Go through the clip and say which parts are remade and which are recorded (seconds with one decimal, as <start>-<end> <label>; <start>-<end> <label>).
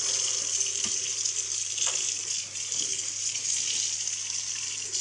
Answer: 0.0-5.0 recorded